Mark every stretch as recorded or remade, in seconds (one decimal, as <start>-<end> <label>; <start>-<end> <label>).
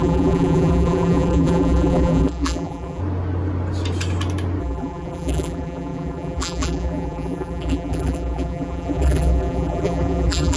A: 0.0-3.0 remade; 3.0-4.6 recorded; 4.6-10.6 remade